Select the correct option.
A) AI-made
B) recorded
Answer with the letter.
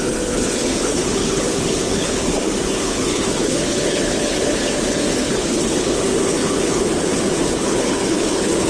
A